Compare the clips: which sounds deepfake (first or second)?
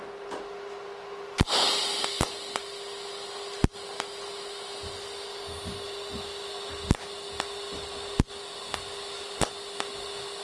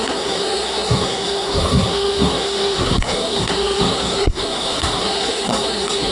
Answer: second